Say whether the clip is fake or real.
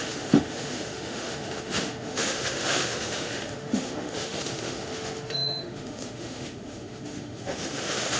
fake